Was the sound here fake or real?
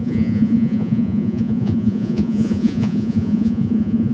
fake